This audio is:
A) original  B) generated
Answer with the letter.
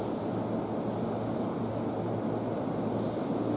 A